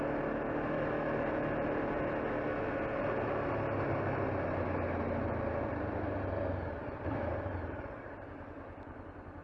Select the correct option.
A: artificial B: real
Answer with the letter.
B